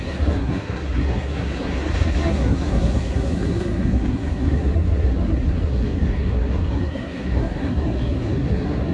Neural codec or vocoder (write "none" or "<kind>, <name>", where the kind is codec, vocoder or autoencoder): codec, SNAC